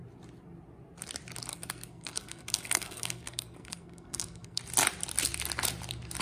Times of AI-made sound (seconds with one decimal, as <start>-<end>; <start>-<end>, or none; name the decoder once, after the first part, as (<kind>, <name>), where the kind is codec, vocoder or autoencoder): 1.5-4.6 (codec, SNAC)